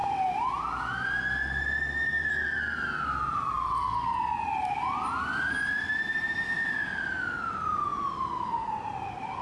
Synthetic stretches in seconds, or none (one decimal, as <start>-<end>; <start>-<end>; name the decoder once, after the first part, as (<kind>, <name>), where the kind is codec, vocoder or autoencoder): 0.0-0.6 (vocoder, BigVGAN v2)